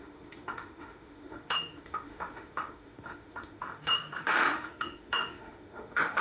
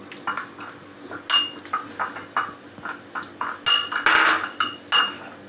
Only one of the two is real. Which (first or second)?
second